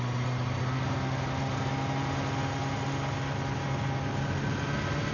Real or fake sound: real